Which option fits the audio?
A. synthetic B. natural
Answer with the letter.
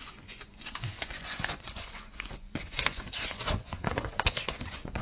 A